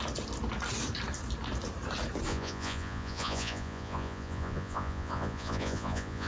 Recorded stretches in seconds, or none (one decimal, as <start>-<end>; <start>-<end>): 0.0-2.3